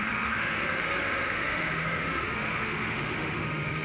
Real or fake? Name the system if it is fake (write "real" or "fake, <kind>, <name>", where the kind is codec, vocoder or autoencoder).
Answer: fake, autoencoder, DAC-VAE